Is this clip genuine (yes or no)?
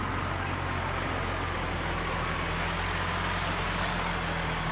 yes